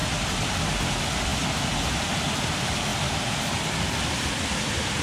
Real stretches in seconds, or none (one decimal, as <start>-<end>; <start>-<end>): 0.0-5.0